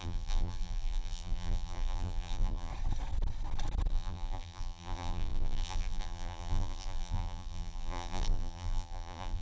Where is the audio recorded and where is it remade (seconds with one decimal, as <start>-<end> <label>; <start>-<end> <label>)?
0.0-2.7 remade; 2.7-3.9 recorded; 3.9-9.4 remade